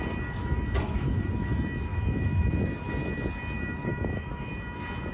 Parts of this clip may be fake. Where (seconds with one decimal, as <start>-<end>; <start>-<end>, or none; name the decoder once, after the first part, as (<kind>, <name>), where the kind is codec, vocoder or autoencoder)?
1.9-2.5 (autoencoder, DAC-VAE); 3.9-4.5